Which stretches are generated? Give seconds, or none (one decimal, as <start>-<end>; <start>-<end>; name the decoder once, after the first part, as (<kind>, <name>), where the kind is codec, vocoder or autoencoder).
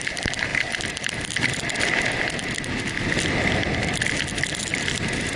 4.7-5.4 (vocoder, BigVGAN v2)